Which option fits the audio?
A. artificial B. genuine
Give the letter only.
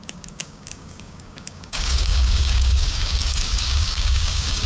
A